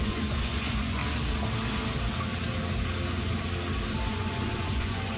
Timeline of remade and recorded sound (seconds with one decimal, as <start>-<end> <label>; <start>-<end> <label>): 0.0-1.0 remade; 1.0-4.1 recorded; 4.1-5.2 remade